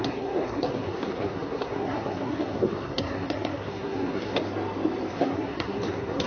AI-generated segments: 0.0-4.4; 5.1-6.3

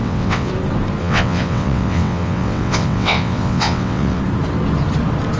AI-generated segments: 0.0-0.5; 1.0-4.2

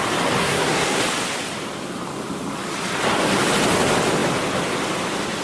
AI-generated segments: 0.4-1.0